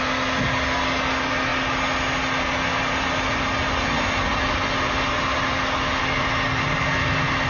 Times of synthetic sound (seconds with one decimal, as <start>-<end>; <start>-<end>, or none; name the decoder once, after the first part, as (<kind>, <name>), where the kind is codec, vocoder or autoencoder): none